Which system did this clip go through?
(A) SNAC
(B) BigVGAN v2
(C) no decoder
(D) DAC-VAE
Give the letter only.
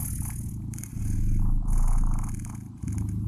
C